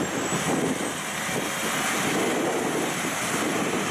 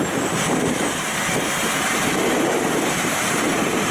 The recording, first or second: first